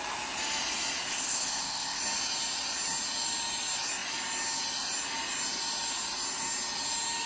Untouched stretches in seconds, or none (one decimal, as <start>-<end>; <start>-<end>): 0.0-1.1; 2.0-7.3